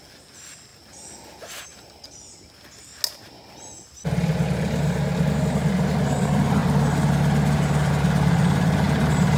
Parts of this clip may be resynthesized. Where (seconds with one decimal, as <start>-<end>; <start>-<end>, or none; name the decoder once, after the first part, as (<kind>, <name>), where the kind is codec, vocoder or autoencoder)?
none